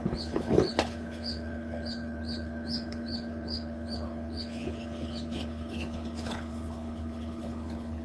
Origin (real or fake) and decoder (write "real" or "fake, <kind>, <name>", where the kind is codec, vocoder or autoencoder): fake, codec, HILCodec